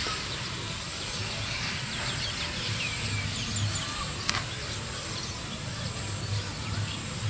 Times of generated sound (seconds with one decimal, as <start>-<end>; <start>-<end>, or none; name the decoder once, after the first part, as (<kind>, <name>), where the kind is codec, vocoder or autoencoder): none